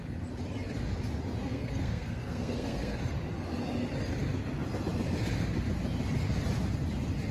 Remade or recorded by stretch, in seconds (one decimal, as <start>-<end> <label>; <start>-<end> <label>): 0.0-1.4 recorded; 1.4-3.0 remade; 3.0-7.3 recorded